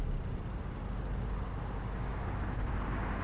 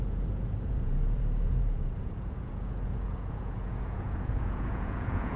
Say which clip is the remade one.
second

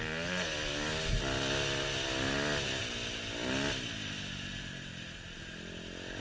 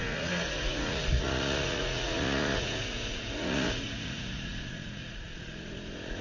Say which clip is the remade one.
second